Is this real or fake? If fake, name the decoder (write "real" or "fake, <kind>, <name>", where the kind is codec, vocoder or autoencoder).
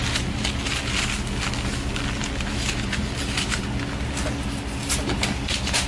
real